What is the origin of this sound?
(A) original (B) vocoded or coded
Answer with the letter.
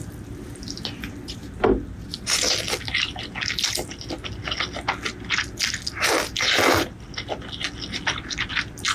A